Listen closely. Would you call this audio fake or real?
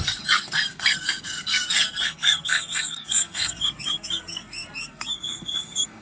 fake